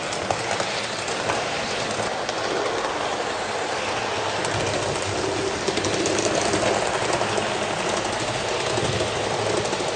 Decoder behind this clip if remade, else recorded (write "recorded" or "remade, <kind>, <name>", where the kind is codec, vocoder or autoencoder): recorded